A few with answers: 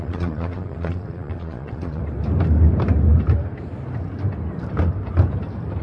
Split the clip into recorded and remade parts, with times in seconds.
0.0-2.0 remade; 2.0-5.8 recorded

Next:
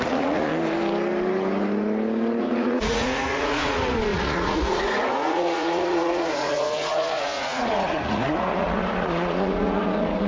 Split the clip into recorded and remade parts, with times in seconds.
0.0-0.5 remade; 0.5-2.4 recorded; 2.4-10.3 remade

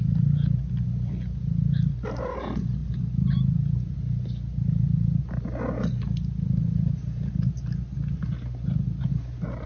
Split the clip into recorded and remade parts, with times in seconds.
0.0-9.7 recorded

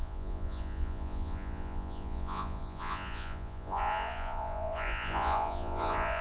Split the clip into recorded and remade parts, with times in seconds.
0.0-6.2 remade

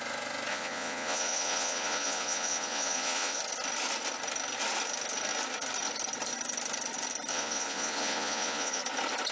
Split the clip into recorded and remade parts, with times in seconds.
0.0-0.5 recorded; 0.5-3.4 remade; 3.4-7.3 recorded; 7.3-8.8 remade; 8.8-9.3 recorded

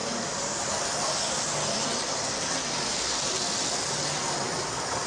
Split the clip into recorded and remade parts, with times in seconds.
0.0-5.1 recorded

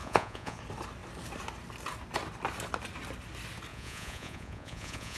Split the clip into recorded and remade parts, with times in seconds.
0.0-0.6 remade; 0.6-3.7 recorded; 3.7-5.2 remade